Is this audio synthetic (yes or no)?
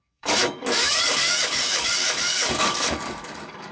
yes